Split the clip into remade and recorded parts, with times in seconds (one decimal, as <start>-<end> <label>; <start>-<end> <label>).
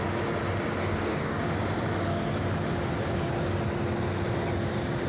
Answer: 0.0-0.8 recorded; 0.8-1.4 remade; 1.4-5.1 recorded